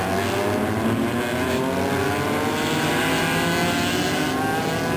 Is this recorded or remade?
recorded